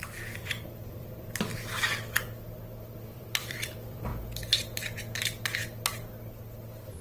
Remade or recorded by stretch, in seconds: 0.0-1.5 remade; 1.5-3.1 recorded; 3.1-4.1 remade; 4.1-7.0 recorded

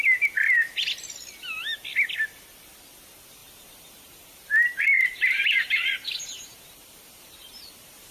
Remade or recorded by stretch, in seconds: 0.0-3.4 recorded; 3.4-8.1 remade

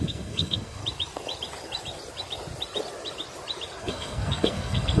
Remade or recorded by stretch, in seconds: 0.0-0.8 remade; 0.8-3.8 recorded; 3.8-5.0 remade